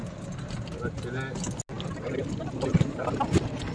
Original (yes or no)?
yes